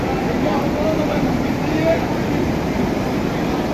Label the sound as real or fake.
real